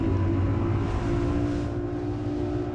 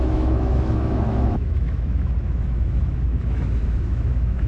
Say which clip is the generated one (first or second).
second